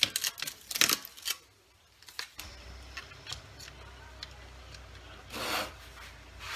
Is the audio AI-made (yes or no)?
no